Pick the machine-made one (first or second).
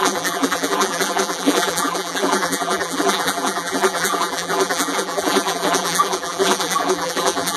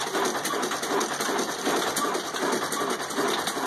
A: first